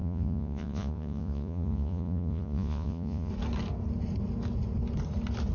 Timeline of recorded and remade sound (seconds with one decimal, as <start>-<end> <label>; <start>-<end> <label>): 0.0-3.3 remade; 3.3-5.5 recorded